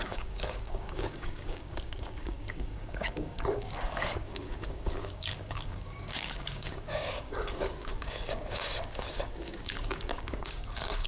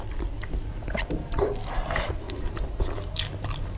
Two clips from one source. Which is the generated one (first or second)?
first